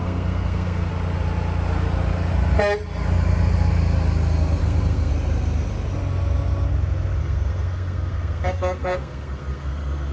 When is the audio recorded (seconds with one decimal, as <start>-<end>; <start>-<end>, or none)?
0.9-4.6; 5.1-7.2